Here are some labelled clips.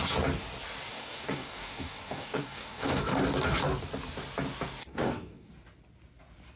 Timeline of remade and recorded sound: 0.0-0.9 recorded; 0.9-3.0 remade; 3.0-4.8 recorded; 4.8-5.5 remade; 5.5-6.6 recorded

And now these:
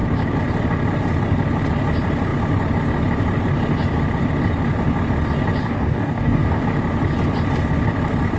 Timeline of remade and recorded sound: 0.0-5.6 recorded; 5.6-6.6 remade; 6.6-8.4 recorded

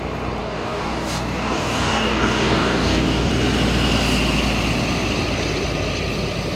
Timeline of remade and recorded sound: 0.0-0.4 recorded; 0.4-3.3 remade; 3.3-6.6 recorded